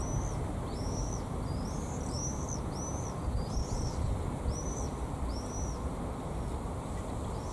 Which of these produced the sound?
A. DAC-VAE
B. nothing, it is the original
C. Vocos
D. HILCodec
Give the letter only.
B